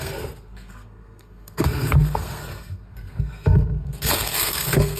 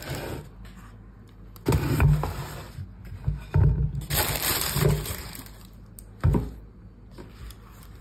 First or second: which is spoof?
first